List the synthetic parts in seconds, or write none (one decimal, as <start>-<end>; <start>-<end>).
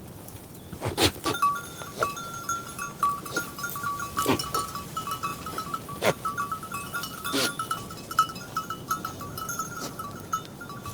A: 5.3-9.3